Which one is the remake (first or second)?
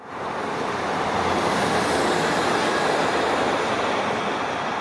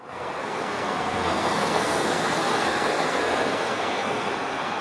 second